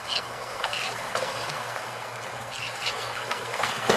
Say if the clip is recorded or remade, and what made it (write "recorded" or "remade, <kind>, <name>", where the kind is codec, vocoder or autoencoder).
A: remade, codec, SNAC